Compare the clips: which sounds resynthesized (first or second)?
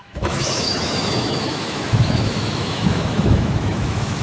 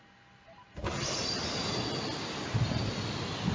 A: first